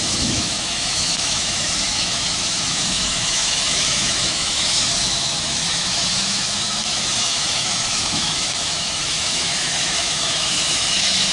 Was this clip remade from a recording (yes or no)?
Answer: yes